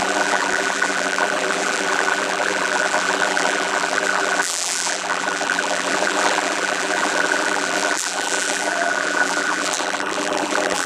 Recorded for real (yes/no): no